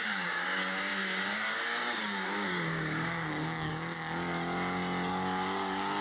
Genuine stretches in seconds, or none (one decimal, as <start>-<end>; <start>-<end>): 3.7-5.1